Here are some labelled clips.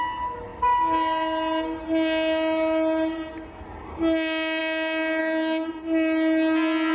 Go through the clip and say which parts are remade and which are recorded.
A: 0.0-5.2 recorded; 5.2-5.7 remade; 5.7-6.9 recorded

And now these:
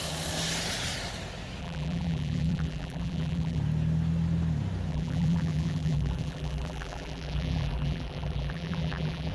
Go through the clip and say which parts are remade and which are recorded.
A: 0.0-1.6 recorded; 1.6-3.6 remade; 3.6-4.9 recorded; 4.9-9.3 remade

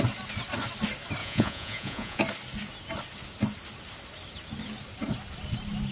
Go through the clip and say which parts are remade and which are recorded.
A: 0.0-1.2 recorded; 1.2-2.2 remade; 2.2-5.9 recorded